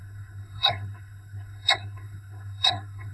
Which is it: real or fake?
fake